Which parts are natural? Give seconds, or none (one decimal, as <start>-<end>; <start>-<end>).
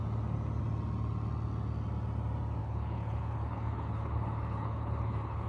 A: 0.0-2.6